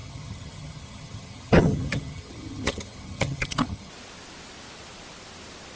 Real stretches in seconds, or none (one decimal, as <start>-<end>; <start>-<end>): 3.9-5.8